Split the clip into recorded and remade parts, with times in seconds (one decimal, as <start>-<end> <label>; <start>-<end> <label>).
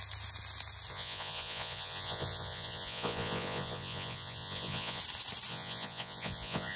0.0-0.9 recorded; 0.9-5.0 remade; 5.0-5.5 recorded; 5.5-6.8 remade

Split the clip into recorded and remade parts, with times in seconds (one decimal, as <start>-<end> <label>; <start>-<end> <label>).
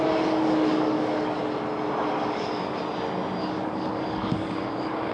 0.0-1.4 remade; 1.4-2.1 recorded; 2.1-2.8 remade; 2.8-3.4 recorded; 3.4-5.1 remade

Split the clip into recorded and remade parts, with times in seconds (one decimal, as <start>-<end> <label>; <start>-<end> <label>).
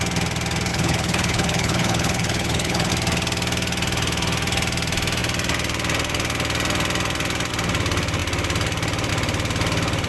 0.0-0.7 recorded; 0.7-2.9 remade; 2.9-10.1 recorded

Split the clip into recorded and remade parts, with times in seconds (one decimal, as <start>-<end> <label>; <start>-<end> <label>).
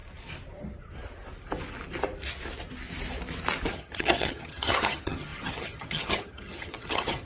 0.0-3.7 recorded; 3.7-7.3 remade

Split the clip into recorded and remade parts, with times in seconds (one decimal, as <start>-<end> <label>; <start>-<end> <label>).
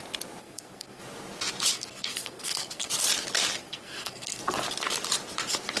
0.0-0.4 recorded; 0.4-1.0 remade; 1.0-1.7 recorded; 1.7-2.9 remade; 2.9-3.6 recorded; 3.6-4.4 remade; 4.4-5.8 recorded